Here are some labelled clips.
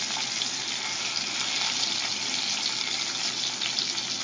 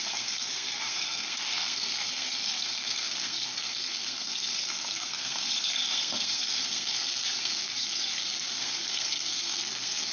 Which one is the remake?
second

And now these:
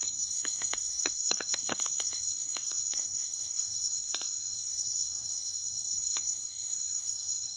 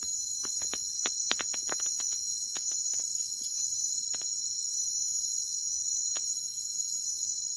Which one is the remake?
first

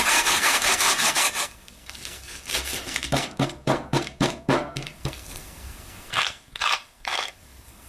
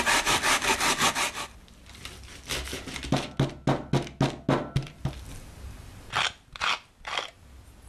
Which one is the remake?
first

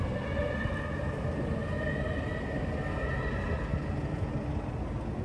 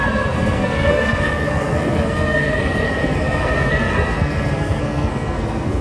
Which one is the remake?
second